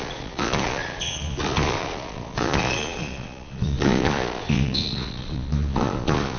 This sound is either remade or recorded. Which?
remade